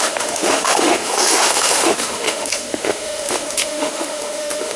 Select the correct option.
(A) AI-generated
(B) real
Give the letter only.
A